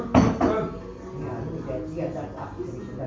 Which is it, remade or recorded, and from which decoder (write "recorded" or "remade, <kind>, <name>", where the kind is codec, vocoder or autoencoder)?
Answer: recorded